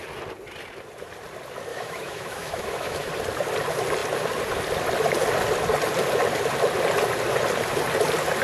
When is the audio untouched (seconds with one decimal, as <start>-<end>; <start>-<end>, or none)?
0.0-1.7; 3.1-8.4